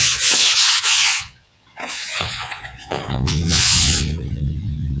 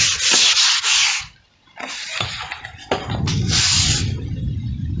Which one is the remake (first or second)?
first